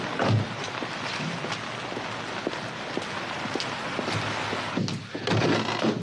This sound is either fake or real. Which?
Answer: real